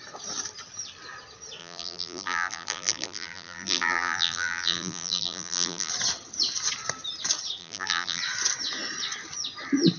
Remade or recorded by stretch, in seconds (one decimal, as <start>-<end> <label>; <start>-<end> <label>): 0.0-1.6 recorded; 1.6-5.9 remade; 5.9-7.6 recorded; 7.6-8.2 remade; 8.2-10.0 recorded